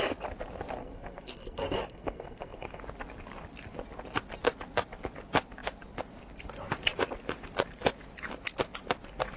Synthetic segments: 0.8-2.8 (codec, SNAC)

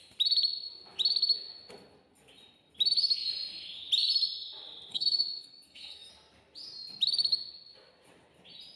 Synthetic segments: 4.9-6.1 (codec, SNAC)

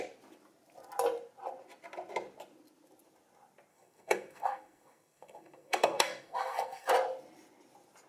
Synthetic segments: 3.7-6.9 (codec, SNAC)